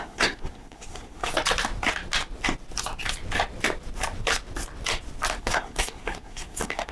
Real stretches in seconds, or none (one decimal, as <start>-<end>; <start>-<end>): 1.3-5.4